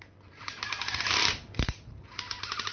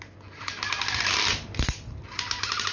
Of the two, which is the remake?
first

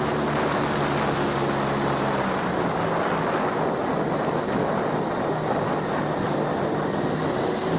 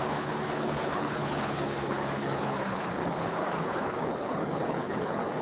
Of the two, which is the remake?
second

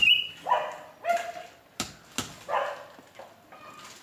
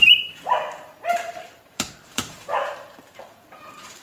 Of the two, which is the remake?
second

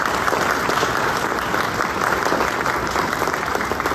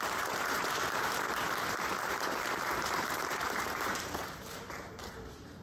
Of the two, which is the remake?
second